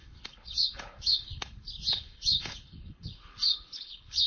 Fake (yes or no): yes